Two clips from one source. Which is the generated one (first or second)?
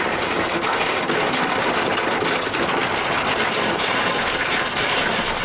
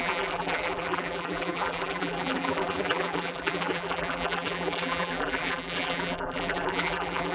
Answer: second